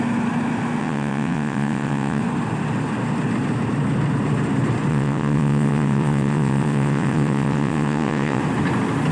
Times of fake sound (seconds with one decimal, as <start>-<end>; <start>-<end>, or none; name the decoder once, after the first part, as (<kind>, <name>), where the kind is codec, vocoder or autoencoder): 0.8-2.2 (vocoder, WaveNeXt); 4.9-8.4